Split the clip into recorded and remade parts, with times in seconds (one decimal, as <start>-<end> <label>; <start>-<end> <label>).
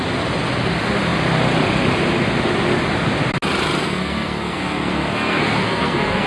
0.0-3.8 recorded; 3.8-6.3 remade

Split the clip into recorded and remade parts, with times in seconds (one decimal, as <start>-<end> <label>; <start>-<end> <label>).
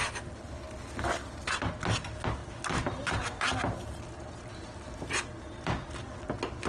0.0-6.7 recorded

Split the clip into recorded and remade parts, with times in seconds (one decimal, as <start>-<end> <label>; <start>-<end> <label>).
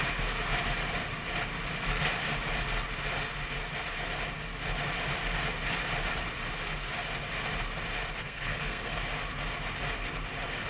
0.0-8.2 recorded; 8.2-9.0 remade; 9.0-10.7 recorded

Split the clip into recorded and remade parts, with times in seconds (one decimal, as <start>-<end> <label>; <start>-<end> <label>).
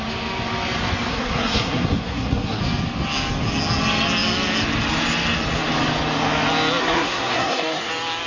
0.0-1.1 recorded; 1.1-2.6 remade; 2.6-6.8 recorded; 6.8-7.9 remade; 7.9-8.3 recorded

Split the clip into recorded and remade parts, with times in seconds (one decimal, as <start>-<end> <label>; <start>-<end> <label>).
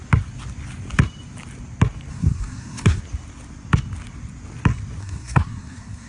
0.0-2.1 recorded; 2.1-3.0 remade; 3.0-5.0 recorded; 5.0-6.1 remade